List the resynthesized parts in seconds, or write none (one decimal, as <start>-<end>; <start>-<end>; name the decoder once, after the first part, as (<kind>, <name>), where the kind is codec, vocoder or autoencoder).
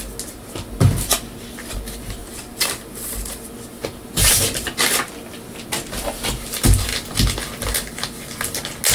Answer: 2.2-5.1 (vocoder, BigVGAN v2)